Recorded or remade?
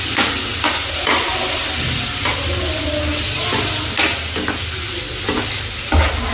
recorded